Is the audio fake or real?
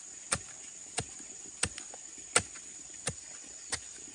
real